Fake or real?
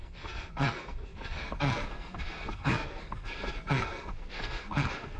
fake